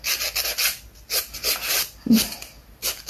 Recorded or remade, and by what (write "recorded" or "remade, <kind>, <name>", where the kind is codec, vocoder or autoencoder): recorded